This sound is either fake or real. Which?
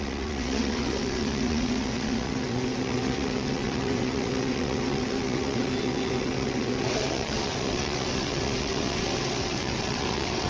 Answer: fake